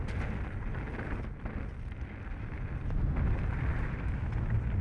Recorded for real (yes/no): yes